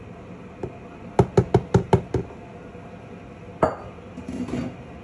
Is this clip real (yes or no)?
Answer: yes